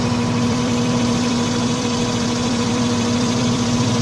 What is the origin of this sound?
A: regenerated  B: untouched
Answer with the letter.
A